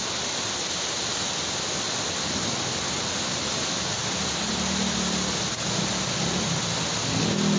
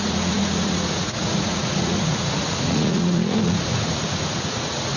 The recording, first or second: first